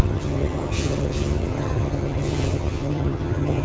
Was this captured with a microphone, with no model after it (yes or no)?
no